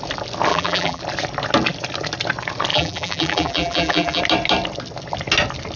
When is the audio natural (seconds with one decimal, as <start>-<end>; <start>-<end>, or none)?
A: 0.0-0.5; 1.0-2.7; 4.2-5.8

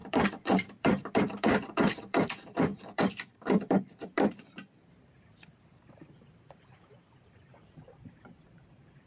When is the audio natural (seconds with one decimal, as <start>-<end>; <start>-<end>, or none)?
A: none

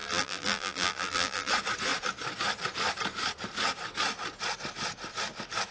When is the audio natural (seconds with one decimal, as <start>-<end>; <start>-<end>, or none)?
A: 1.5-5.7

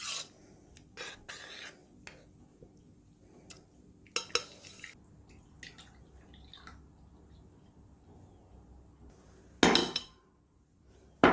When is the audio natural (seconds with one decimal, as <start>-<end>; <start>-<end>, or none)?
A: 0.0-9.8; 10.9-11.3

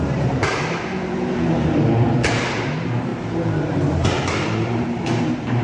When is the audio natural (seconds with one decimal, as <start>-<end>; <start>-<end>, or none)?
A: none

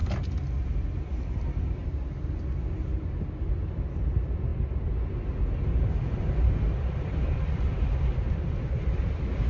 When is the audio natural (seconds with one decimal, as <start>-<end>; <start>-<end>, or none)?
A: 0.0-1.8; 3.5-9.5

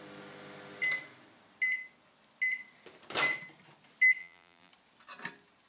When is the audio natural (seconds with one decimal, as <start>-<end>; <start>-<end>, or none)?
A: 0.0-4.2; 4.7-5.7

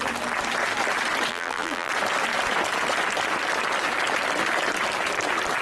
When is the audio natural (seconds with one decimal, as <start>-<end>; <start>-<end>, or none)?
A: 0.0-1.3; 1.9-5.6